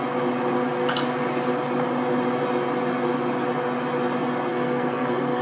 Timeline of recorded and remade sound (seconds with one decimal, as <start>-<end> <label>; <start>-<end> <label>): 0.0-4.5 recorded; 4.5-5.4 remade